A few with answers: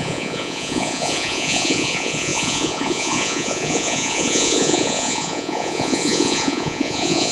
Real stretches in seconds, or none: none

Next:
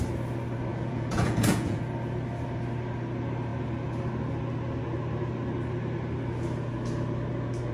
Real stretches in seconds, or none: 0.0-0.7; 1.8-7.7

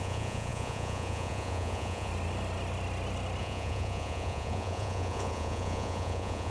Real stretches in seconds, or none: 2.1-3.4